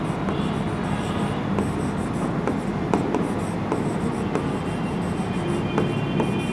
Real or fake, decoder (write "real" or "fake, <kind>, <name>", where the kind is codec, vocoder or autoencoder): real